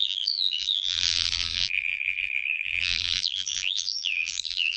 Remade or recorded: remade